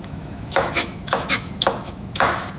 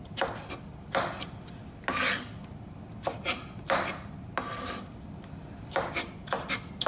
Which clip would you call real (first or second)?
second